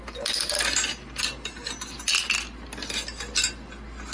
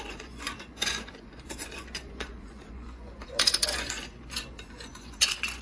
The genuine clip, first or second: first